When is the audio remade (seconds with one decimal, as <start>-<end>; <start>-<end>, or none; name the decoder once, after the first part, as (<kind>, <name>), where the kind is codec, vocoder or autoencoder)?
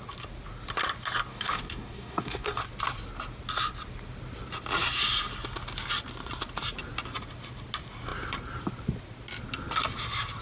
1.3-2.6 (codec, DAC)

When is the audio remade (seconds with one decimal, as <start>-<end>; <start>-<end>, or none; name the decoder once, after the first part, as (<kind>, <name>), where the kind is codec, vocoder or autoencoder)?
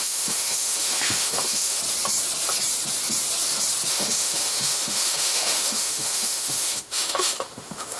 0.0-1.8 (autoencoder, DAC-VAE); 3.9-8.0